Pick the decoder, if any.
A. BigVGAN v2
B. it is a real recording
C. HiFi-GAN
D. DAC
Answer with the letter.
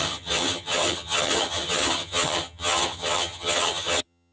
C